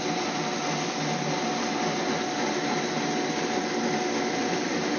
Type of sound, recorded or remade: recorded